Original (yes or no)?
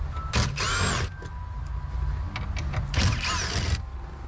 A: yes